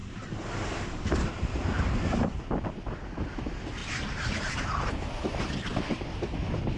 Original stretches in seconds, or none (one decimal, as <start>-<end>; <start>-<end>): 2.2-3.8; 4.9-6.8